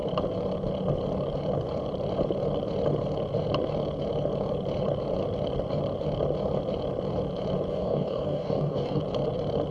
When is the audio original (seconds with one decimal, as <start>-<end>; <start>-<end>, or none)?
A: 0.0-7.7; 9.0-9.7